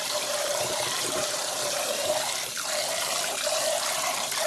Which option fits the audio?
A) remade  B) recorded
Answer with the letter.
A